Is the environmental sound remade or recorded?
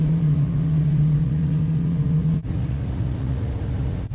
remade